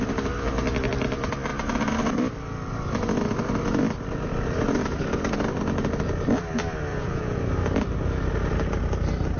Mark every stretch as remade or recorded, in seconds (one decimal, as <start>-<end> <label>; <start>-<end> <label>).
0.0-6.9 recorded; 6.9-7.4 remade; 7.4-9.4 recorded